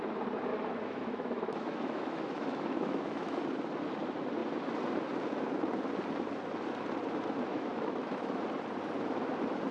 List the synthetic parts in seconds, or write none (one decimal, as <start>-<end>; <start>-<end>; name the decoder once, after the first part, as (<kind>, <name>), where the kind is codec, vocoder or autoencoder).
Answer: 0.5-3.4 (autoencoder, DAC-VAE); 7.5-8.4